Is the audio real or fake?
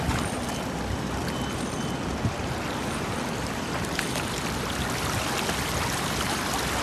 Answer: real